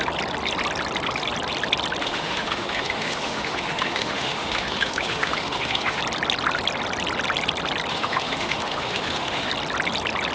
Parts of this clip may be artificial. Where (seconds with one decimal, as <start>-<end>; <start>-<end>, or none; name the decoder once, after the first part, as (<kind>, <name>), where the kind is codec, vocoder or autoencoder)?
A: 2.0-6.0 (autoencoder, DAC-VAE); 7.9-9.5